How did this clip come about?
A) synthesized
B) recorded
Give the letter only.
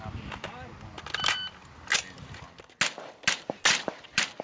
B